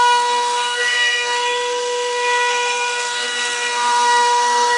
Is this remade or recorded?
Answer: remade